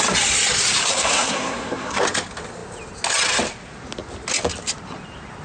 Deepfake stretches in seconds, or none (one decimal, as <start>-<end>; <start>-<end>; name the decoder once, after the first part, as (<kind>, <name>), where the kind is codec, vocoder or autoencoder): 0.9-2.0 (codec, SNAC)

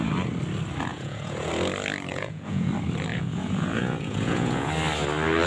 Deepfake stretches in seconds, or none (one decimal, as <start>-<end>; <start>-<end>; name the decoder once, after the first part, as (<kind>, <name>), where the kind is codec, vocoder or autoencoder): 0.9-1.5 (vocoder, Vocos); 2.1-2.7; 3.1-4.7

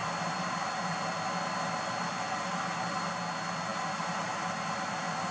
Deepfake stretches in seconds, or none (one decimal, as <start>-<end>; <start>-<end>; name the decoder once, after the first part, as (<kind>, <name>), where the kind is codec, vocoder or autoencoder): 0.0-3.2 (vocoder, BigVGAN v2)

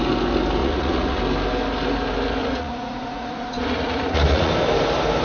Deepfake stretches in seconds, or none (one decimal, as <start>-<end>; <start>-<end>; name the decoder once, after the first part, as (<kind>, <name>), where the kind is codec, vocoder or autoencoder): 0.6-1.2 (vocoder, Vocos); 2.4-4.5

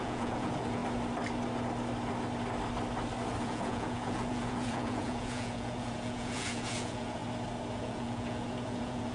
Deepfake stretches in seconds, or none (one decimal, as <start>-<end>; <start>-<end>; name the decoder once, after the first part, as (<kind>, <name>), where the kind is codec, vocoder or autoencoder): 0.0-0.8 (vocoder, Vocos); 3.4-7.2; 7.8-9.1

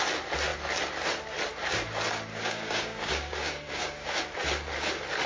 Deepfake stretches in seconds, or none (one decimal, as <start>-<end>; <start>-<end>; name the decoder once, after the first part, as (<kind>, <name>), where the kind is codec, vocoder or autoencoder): 2.3-4.2 (codec, DAC)